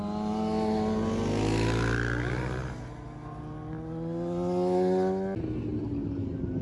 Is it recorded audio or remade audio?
recorded